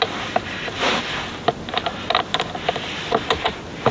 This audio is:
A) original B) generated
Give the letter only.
A